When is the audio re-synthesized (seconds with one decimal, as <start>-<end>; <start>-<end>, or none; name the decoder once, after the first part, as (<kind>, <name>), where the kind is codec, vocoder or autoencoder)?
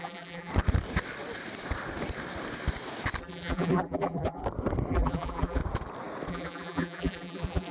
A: 0.0-0.5 (vocoder, BigVGAN v2); 3.2-4.4; 4.9-5.6; 6.3-7.7